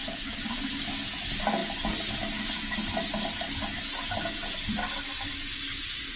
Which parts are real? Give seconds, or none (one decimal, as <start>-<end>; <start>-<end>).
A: 0.0-6.2